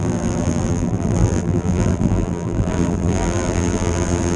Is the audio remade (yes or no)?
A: yes